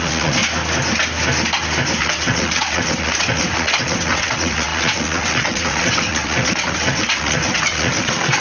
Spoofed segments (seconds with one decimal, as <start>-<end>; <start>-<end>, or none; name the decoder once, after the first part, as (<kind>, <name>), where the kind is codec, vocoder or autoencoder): 0.0-0.4 (vocoder, WaveNeXt); 2.0-8.4